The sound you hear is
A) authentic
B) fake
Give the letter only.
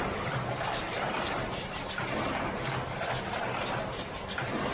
A